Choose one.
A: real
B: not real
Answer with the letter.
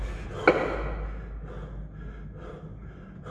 A